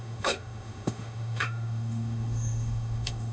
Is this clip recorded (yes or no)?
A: no